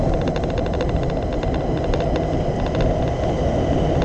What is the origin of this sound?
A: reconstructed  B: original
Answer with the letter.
B